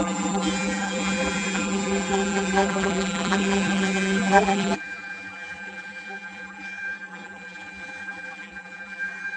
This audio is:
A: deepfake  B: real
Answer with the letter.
A